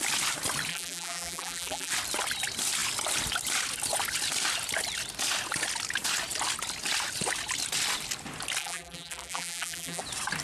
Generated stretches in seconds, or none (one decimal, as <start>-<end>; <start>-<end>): 0.7-1.9; 8.6-10.0